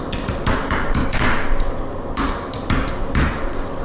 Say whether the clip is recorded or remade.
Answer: remade